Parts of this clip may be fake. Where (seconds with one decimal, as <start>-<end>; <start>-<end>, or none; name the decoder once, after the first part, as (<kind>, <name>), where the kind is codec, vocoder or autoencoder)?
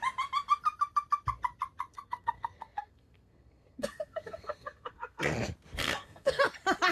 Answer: 1.9-5.2 (codec, SNAC); 5.8-6.4